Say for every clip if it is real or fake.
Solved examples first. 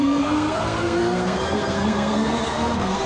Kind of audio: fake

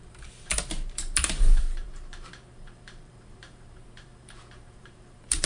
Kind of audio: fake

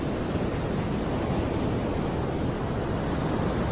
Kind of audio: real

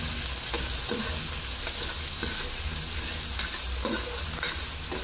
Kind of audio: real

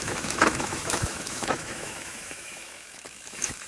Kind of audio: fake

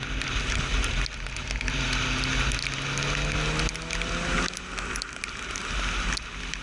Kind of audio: real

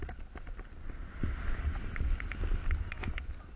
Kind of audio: real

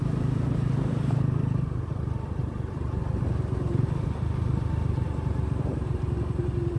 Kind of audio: fake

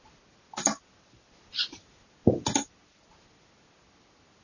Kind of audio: real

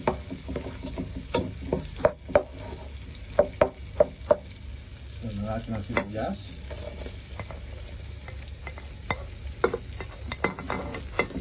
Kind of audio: real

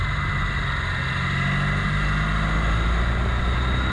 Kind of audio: real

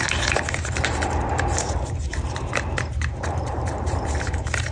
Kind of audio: fake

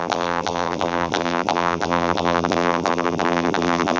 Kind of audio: fake